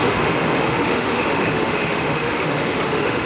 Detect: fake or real fake